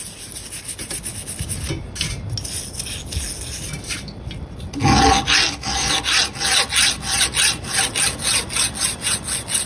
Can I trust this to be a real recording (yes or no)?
yes